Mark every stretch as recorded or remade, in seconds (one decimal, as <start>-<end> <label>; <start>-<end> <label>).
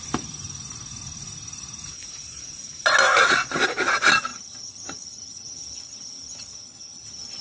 0.0-4.3 recorded; 4.3-7.4 remade